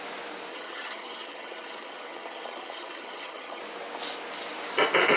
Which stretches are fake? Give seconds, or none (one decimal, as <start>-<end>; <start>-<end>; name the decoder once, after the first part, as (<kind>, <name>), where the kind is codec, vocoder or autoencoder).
0.5-3.6 (vocoder, HiFi-GAN)

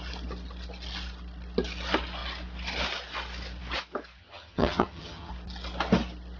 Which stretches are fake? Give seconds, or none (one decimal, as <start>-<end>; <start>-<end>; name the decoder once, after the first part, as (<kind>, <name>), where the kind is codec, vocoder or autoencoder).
4.2-5.3 (vocoder, HiFi-GAN)

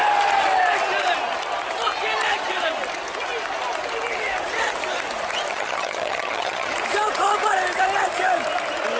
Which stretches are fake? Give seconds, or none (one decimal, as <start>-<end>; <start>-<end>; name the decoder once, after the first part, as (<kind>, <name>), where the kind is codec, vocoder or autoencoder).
5.5-6.7 (vocoder, HiFi-GAN)

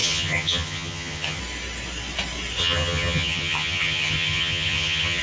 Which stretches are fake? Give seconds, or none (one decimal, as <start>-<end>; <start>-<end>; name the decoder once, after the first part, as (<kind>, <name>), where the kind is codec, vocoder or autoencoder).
0.0-1.4 (vocoder, HiFi-GAN); 2.6-5.2

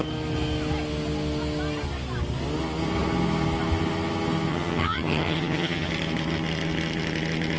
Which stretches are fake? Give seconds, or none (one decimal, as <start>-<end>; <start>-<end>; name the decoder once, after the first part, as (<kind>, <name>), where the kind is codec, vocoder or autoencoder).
4.5-5.9 (vocoder, HiFi-GAN)

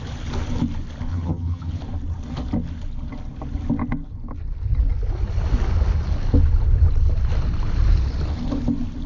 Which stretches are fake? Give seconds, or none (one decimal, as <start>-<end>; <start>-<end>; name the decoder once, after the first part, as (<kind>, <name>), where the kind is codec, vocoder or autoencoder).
1.1-1.8 (vocoder, HiFi-GAN)